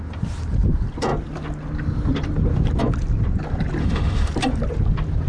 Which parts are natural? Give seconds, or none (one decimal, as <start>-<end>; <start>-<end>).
0.0-3.8; 4.3-5.3